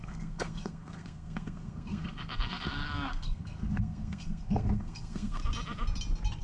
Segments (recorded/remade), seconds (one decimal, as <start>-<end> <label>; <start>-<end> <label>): 0.0-5.4 remade; 5.4-6.4 recorded